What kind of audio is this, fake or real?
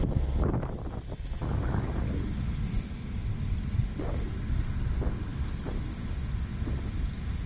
real